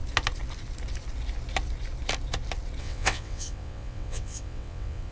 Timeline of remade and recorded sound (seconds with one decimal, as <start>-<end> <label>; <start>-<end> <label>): 0.0-2.8 recorded; 2.8-5.1 remade